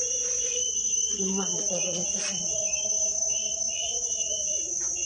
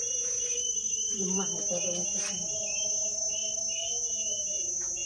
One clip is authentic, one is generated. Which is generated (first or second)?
first